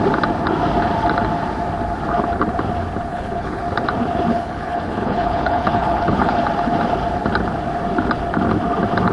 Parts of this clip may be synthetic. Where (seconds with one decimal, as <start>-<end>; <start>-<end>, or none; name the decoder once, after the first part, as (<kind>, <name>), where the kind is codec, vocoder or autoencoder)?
3.1-3.6 (codec, HILCodec); 4.3-6.4